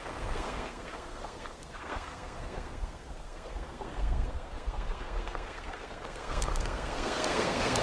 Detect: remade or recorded remade